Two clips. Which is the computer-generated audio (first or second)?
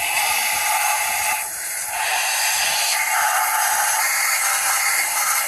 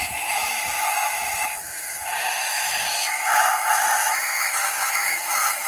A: second